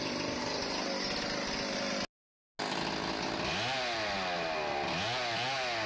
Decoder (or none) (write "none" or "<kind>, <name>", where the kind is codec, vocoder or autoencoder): none